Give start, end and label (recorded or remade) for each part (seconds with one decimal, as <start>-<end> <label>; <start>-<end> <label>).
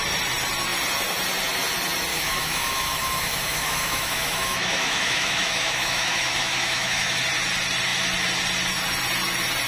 0.0-2.1 recorded; 2.1-7.2 remade; 7.2-9.7 recorded